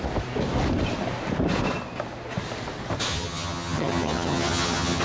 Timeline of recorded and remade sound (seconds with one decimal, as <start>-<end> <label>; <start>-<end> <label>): 0.0-3.1 recorded; 3.1-5.0 remade